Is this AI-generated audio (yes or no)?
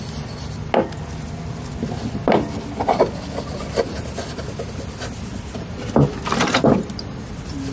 no